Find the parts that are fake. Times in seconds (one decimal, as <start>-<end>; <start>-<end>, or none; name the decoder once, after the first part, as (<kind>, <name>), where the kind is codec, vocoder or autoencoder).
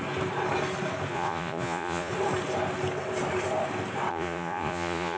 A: 1.1-2.1 (vocoder, Vocos); 4.1-5.2